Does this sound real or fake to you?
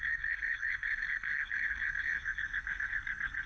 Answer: fake